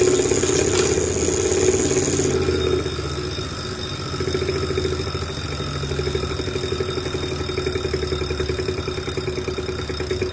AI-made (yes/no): no